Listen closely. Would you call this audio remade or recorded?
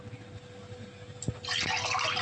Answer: recorded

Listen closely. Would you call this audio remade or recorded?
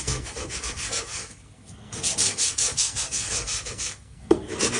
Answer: remade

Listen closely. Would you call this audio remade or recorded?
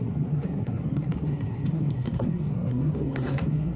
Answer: remade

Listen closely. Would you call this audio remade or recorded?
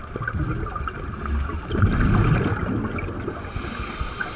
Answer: recorded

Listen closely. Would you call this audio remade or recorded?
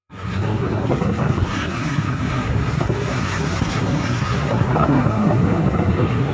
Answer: remade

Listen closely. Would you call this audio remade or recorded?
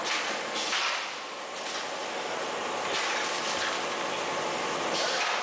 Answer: recorded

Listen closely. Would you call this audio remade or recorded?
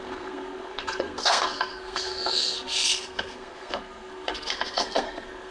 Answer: remade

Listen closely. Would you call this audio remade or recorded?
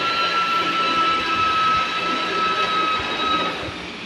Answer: recorded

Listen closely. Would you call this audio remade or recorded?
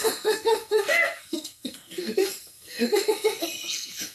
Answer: remade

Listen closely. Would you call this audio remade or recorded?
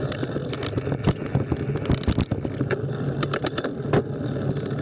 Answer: recorded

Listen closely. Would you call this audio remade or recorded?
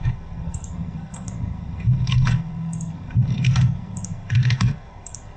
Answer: remade